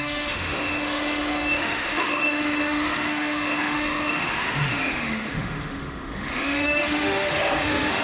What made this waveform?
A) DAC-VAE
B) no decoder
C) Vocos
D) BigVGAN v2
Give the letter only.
A